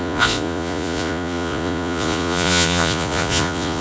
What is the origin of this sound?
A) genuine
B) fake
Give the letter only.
B